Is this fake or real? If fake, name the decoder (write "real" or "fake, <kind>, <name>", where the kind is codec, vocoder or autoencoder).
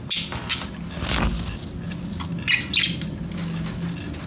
real